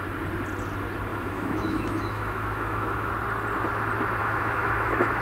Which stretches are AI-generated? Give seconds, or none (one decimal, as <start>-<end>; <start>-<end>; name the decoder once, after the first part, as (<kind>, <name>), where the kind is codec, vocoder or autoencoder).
1.1-3.1 (autoencoder, DAC-VAE); 4.2-5.2